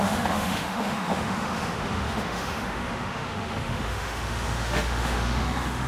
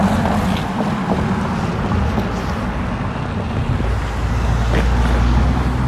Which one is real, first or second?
second